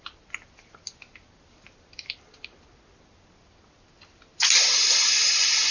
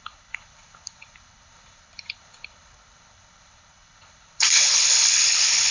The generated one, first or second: second